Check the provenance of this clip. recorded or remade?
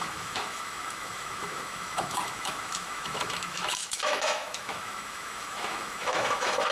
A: remade